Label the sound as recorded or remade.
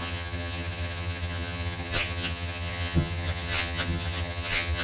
remade